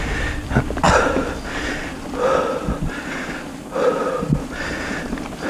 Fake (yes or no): no